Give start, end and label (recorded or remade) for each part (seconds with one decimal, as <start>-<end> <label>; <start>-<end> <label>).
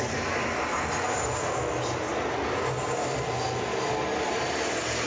0.0-5.1 recorded